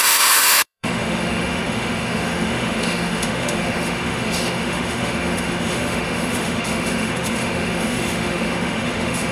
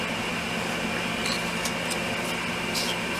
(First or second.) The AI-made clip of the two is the first